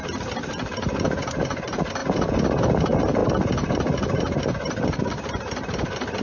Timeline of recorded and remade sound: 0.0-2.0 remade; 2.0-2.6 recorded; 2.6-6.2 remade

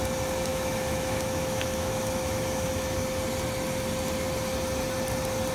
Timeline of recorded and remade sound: 0.0-0.5 recorded; 0.5-2.7 remade; 2.7-5.5 recorded